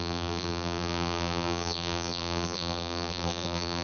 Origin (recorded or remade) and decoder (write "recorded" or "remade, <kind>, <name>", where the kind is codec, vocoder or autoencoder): remade, vocoder, BigVGAN v2